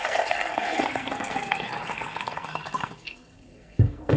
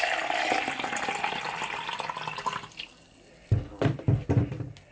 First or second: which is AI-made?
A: first